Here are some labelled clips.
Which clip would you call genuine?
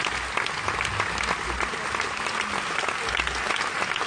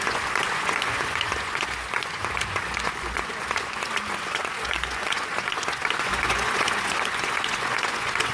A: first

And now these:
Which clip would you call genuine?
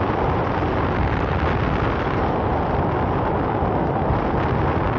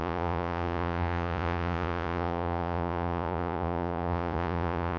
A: first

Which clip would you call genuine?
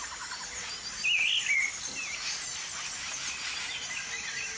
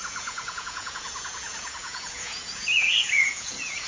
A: first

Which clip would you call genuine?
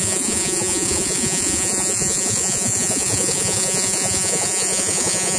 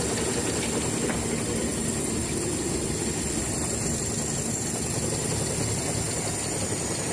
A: second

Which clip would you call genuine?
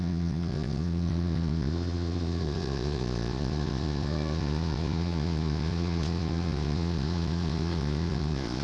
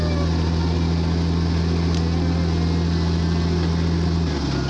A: second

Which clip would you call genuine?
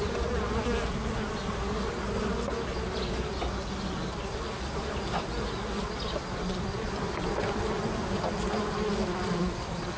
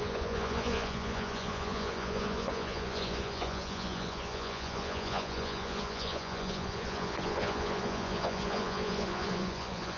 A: first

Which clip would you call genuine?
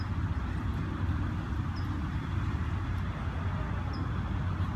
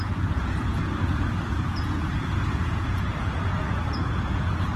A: first